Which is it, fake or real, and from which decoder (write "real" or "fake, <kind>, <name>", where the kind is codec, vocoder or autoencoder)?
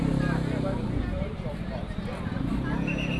real